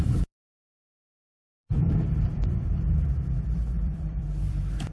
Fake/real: fake